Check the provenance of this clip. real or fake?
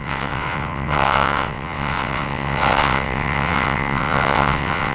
fake